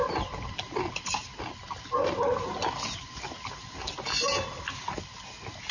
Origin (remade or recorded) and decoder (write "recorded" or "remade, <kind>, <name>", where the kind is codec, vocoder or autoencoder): recorded